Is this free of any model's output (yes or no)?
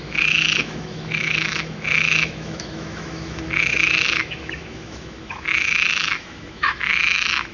no